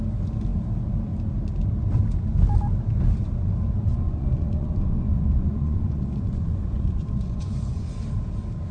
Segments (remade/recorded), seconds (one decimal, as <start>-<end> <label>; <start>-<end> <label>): 0.0-3.9 recorded; 3.9-7.9 remade; 7.9-8.7 recorded